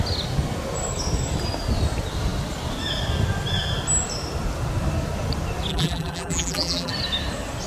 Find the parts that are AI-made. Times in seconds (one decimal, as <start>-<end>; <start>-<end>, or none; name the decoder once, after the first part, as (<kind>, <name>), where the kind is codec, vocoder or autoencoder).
5.7-6.9 (vocoder, BigVGAN v2)